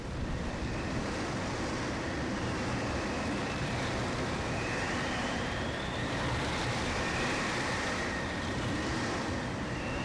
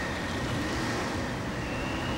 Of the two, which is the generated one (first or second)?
first